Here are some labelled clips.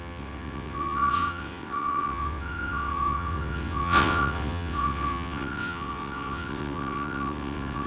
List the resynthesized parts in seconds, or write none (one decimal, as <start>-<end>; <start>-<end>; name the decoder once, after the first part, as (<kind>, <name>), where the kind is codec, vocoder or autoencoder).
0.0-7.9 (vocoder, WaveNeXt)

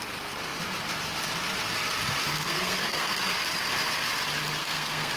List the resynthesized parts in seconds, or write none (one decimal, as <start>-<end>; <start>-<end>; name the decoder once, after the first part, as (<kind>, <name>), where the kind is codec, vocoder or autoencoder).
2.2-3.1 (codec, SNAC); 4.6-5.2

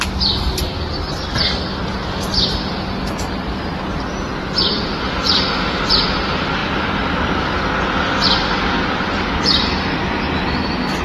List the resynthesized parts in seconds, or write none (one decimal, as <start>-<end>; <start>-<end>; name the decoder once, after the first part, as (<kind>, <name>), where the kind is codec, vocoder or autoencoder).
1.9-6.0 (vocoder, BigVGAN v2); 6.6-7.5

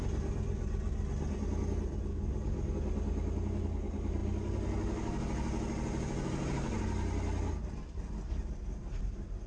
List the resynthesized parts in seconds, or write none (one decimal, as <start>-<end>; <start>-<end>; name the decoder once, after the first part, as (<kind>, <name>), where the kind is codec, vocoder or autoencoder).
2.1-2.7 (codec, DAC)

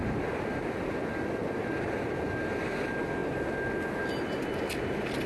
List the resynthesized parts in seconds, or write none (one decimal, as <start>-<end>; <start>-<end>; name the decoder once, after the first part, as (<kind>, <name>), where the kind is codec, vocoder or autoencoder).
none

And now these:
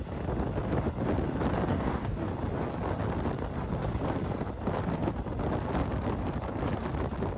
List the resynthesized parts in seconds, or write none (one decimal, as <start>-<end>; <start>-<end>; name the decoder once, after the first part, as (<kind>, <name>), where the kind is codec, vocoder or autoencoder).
1.7-2.3 (codec, DAC)

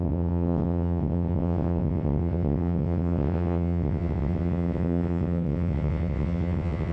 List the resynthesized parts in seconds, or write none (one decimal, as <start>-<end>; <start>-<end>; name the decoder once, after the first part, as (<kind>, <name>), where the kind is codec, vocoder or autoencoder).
0.0-6.9 (vocoder, WaveNeXt)